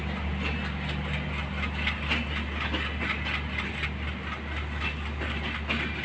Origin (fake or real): real